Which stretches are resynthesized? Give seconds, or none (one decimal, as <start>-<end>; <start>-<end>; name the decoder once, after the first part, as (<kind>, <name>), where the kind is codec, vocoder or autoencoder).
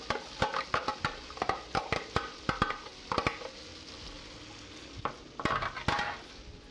0.9-2.4 (vocoder, BigVGAN v2)